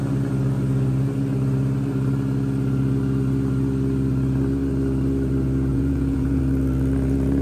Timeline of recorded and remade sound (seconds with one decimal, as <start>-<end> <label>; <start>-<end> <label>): 0.0-5.7 recorded; 5.7-6.4 remade; 6.4-7.4 recorded